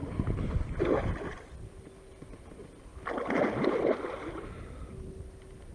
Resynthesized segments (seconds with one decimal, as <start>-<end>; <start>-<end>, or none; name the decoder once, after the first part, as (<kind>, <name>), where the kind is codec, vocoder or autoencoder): none